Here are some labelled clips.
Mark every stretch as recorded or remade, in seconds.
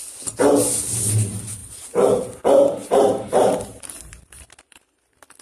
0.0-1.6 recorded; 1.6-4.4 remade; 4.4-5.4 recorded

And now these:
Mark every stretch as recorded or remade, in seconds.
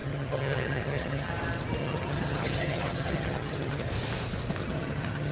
0.0-1.3 remade; 1.3-1.8 recorded; 1.8-3.9 remade; 3.9-4.6 recorded; 4.6-5.3 remade